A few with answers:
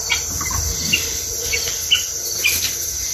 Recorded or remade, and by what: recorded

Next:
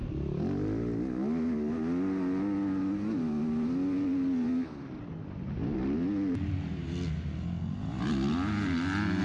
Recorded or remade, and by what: recorded